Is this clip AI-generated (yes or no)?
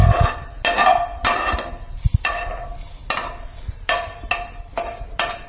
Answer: no